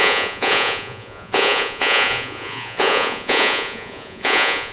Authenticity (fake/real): fake